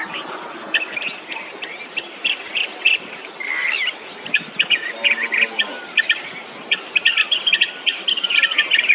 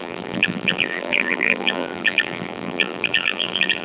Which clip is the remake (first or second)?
second